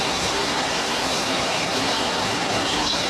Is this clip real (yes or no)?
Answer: no